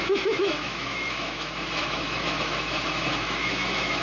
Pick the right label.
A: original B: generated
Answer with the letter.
B